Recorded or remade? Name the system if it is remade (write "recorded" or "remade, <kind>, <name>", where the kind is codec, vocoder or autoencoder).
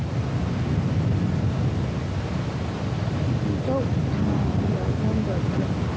recorded